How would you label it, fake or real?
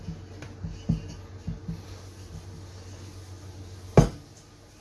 real